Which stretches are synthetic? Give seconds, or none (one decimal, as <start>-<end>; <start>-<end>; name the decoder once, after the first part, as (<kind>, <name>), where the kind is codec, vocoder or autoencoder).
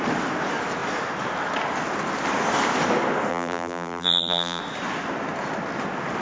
3.3-4.6 (vocoder, BigVGAN v2)